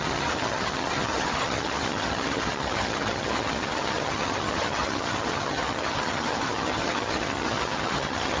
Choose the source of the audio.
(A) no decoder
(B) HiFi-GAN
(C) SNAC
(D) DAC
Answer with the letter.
B